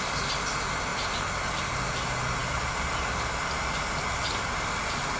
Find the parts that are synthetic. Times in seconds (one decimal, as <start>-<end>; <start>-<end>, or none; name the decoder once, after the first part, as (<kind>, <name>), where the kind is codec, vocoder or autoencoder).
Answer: none